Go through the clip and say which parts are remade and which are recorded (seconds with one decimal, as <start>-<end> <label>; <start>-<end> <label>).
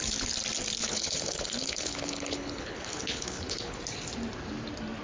0.0-0.8 recorded; 0.8-3.8 remade; 3.8-5.0 recorded